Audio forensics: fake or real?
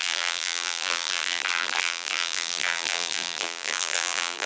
fake